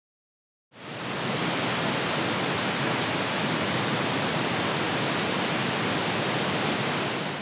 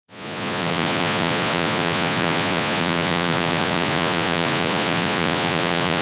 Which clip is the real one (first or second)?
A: first